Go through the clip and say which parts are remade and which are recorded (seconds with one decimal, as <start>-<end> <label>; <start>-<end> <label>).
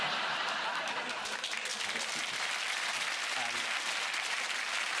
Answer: 0.0-5.0 recorded